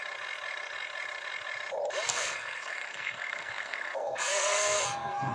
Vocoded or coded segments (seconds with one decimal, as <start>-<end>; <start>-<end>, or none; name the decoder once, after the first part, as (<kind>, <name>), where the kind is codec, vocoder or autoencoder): 2.1-5.3 (codec, SNAC)